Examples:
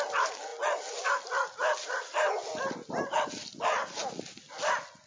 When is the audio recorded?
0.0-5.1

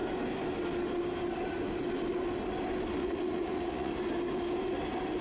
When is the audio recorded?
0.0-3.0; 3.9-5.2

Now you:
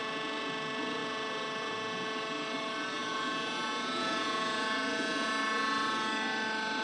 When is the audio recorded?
0.0-3.0; 5.3-6.8

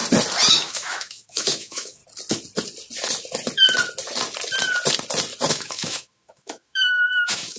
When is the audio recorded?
0.0-0.5; 2.0-5.5